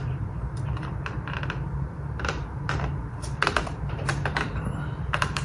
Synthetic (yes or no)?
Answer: yes